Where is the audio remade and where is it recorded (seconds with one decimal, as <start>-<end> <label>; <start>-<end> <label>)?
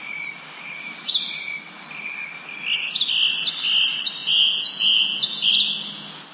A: 0.0-4.2 recorded; 4.2-5.5 remade; 5.5-6.3 recorded